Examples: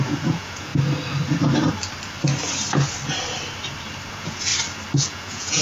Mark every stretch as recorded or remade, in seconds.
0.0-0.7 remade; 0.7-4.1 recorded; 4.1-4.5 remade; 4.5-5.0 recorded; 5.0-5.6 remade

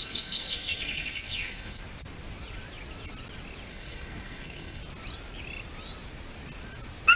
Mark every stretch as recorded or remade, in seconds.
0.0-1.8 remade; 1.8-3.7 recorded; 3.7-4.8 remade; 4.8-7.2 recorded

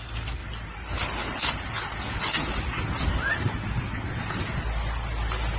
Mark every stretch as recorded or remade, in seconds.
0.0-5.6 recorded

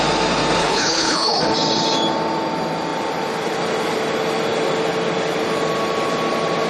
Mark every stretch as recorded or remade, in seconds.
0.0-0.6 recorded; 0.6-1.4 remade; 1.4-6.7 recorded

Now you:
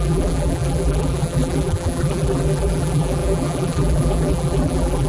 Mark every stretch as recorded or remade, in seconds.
0.0-5.1 remade

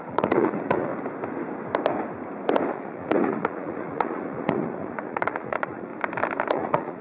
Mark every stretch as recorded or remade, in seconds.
0.0-0.9 remade; 0.9-2.7 recorded; 2.7-5.9 remade; 5.9-6.5 recorded; 6.5-7.0 remade

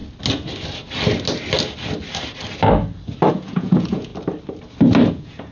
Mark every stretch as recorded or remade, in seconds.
0.0-3.3 recorded; 3.3-4.1 remade; 4.1-5.1 recorded; 5.1-5.5 remade